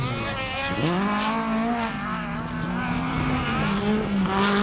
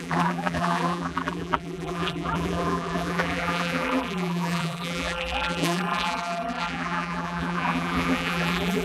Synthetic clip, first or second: second